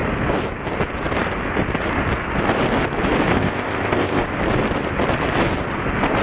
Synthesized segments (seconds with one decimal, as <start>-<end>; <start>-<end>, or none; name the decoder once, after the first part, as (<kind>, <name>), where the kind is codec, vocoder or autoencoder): 3.3-4.2 (codec, ZipCodec)